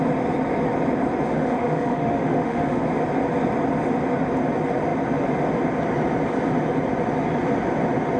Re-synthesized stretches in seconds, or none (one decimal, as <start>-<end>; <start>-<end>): 1.3-2.8